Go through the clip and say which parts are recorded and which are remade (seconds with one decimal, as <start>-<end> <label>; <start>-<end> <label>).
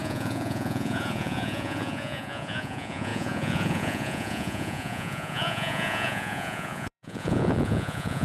0.0-8.2 remade